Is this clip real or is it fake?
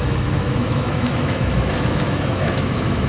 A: fake